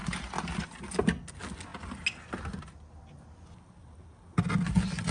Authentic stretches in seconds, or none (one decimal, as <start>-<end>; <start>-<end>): 0.0-5.1